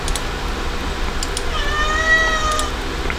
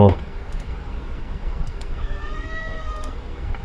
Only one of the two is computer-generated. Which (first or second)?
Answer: second